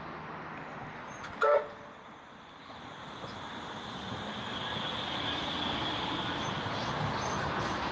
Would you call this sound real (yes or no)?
yes